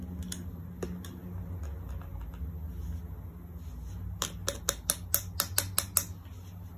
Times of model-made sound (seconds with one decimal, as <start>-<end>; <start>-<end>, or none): none